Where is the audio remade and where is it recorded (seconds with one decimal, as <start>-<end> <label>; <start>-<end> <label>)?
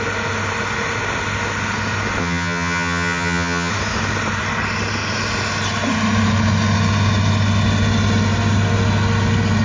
0.0-2.2 recorded; 2.2-3.7 remade; 3.7-9.6 recorded